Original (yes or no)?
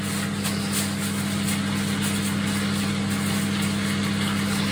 yes